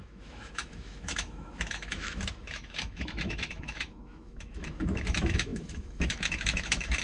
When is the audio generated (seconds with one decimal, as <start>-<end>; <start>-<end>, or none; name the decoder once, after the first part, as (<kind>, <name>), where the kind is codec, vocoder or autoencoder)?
0.0-7.0 (autoencoder, DAC-VAE)